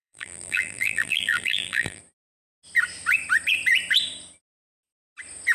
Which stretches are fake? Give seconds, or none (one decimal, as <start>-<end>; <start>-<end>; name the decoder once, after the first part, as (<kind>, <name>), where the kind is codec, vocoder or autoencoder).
0.0-2.0 (vocoder, BigVGAN v2)